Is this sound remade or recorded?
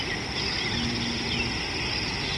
recorded